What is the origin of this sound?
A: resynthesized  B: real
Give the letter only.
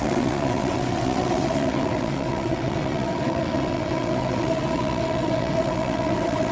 A